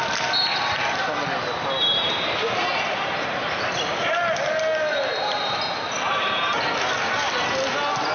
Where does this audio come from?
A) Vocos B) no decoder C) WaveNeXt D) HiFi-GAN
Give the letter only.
B